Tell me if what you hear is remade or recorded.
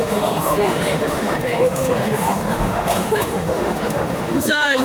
remade